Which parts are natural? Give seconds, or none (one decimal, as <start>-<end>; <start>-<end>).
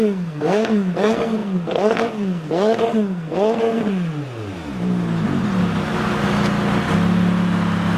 3.8-8.0